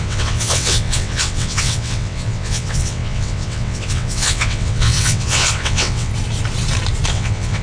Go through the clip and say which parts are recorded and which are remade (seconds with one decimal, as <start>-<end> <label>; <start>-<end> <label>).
0.0-6.1 remade; 6.1-7.1 recorded; 7.1-7.6 remade